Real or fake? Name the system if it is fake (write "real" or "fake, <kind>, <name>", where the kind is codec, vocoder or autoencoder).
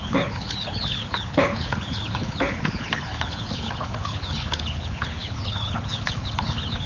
fake, codec, HILCodec